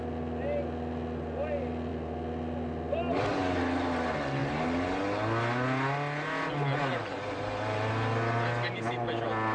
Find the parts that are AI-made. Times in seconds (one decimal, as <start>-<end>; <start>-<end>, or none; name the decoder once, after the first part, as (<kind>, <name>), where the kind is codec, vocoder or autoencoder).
none